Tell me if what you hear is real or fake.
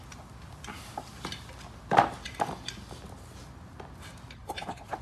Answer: real